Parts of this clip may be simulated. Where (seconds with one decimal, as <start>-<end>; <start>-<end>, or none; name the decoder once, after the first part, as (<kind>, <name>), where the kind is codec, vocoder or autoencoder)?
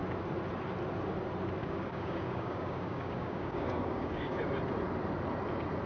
1.6-4.4 (codec, DAC)